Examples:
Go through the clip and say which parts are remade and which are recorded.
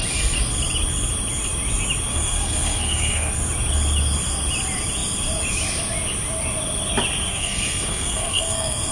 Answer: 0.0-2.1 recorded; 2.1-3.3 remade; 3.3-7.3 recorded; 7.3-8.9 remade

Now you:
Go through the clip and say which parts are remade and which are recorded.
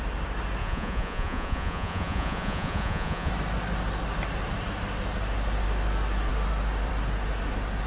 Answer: 0.0-0.6 recorded; 0.6-3.3 remade; 3.3-7.9 recorded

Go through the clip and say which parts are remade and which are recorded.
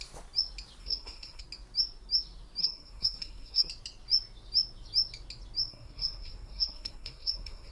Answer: 0.0-0.8 recorded; 0.8-1.4 remade; 1.4-2.6 recorded; 2.6-3.7 remade; 3.7-5.7 recorded; 5.7-7.7 remade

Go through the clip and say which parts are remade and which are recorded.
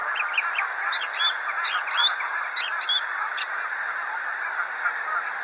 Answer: 0.0-5.4 recorded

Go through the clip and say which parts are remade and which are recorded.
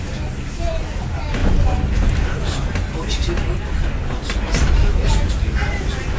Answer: 0.0-6.2 recorded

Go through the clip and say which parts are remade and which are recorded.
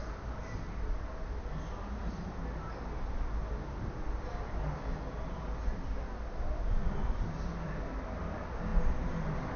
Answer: 0.0-9.6 recorded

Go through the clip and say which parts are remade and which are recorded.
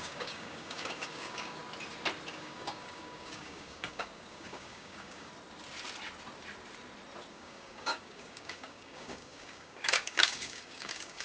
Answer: 0.0-1.6 remade; 1.6-2.3 recorded; 2.3-5.3 remade; 5.3-7.3 recorded; 7.3-11.2 remade